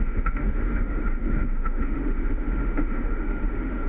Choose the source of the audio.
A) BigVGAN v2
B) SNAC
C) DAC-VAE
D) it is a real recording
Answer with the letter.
C